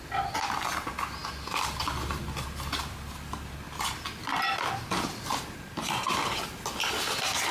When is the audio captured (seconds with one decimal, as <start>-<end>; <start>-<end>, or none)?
0.0-7.5